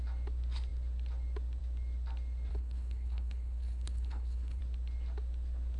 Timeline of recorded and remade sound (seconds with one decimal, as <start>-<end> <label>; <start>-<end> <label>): 0.0-2.5 recorded; 2.5-4.6 remade; 4.6-5.8 recorded